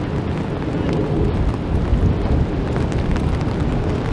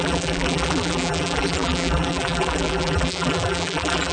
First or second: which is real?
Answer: first